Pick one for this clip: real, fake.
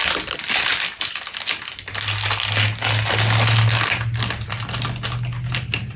real